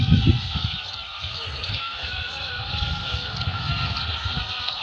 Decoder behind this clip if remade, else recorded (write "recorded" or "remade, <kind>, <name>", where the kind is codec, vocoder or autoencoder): remade, codec, SNAC